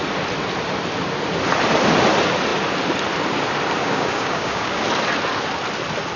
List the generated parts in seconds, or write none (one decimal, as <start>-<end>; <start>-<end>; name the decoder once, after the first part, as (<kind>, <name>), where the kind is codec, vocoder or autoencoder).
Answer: 3.8-4.8 (codec, DAC)